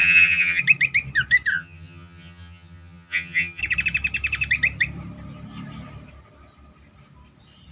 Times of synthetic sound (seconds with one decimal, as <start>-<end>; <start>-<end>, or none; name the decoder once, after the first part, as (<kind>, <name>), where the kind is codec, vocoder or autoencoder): 0.0-0.6 (vocoder, HiFi-GAN); 1.5-3.6

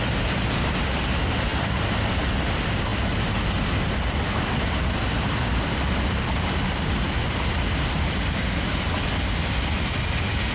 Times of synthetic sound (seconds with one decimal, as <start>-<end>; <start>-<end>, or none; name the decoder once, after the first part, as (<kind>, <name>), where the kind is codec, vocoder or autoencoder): none

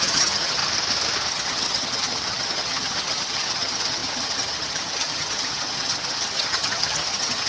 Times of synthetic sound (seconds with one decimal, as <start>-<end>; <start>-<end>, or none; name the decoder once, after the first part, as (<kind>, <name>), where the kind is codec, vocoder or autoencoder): 0.0-0.6 (vocoder, HiFi-GAN); 1.3-7.5

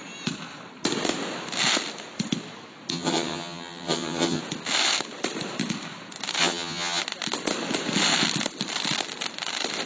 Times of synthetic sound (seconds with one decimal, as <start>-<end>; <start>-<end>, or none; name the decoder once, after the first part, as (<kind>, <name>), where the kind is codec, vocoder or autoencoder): 2.9-4.4 (vocoder, HiFi-GAN); 6.4-7.0

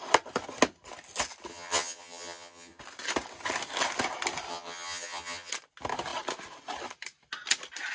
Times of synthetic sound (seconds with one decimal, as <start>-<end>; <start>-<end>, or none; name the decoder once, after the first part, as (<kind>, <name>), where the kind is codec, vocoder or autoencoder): 1.5-2.8 (vocoder, HiFi-GAN); 4.5-5.5